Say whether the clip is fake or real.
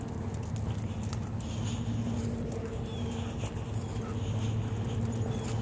real